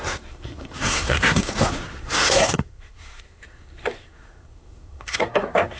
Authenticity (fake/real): fake